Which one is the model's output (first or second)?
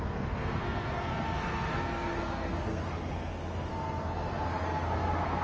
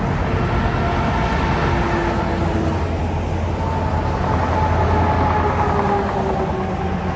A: first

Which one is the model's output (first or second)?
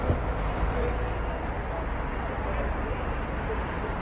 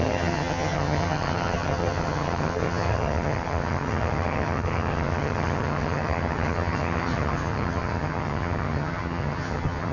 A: second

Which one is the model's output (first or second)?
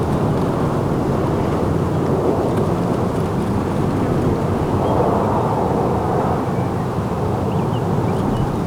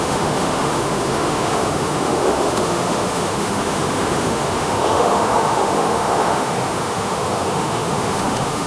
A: second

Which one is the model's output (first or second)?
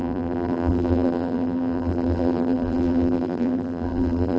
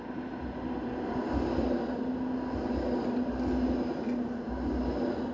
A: first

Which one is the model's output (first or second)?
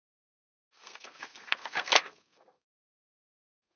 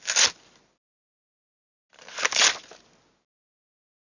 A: first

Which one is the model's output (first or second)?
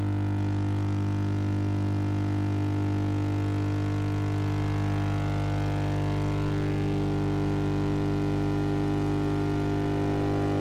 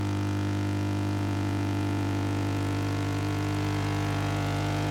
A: second